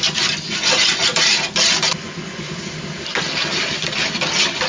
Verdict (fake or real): real